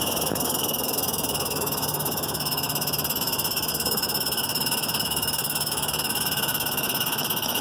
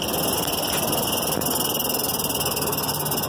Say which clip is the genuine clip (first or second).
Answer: second